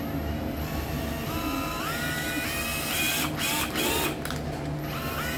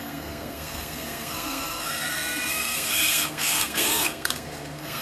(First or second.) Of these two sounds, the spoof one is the second